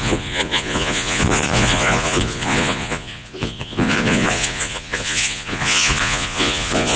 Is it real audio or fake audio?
fake